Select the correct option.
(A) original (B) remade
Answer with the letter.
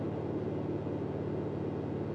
A